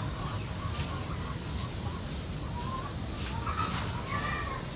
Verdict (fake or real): real